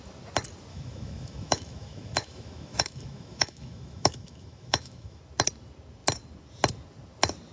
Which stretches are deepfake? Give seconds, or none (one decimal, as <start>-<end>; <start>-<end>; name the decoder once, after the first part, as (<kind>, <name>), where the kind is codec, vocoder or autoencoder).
0.7-5.2 (autoencoder, DAC-VAE)

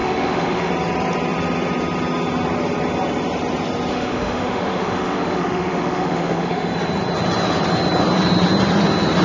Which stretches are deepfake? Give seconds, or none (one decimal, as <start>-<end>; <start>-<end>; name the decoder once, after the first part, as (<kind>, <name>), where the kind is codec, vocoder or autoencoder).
0.0-0.7 (autoencoder, DAC-VAE); 3.9-6.7

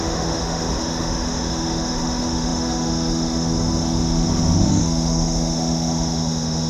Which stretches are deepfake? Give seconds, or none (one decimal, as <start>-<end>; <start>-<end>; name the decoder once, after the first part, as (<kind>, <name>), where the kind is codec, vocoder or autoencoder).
0.0-6.7 (autoencoder, DAC-VAE)

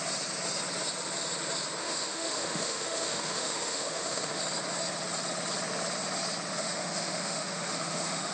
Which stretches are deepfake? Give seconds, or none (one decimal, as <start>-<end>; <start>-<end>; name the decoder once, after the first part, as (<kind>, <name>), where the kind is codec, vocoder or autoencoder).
1.8-4.4 (autoencoder, DAC-VAE); 6.5-8.3